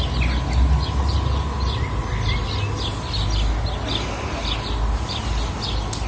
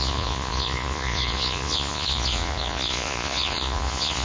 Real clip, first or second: first